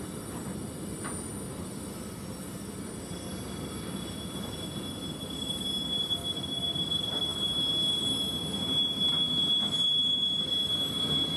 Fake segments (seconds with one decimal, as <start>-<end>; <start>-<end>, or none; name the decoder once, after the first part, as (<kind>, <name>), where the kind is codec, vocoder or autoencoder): 7.3-9.5 (vocoder, BigVGAN v2)